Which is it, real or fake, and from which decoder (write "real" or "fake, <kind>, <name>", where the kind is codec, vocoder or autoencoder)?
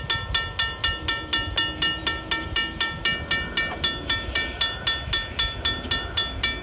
real